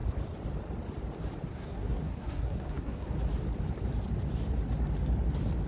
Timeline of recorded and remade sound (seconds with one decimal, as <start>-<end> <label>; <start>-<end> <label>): 0.0-1.5 recorded; 1.5-3.1 remade; 3.1-5.7 recorded